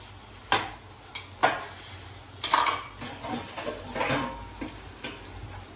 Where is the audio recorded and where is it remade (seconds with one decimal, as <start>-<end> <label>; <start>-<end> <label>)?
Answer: 0.0-5.8 recorded